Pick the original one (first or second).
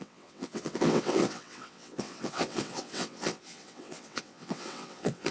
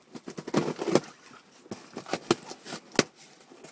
second